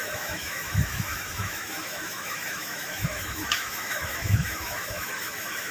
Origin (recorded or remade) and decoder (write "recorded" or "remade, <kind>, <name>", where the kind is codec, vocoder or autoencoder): remade, autoencoder, DAC-VAE